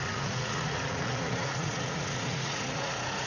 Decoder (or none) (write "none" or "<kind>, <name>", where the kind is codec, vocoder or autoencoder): vocoder, Vocos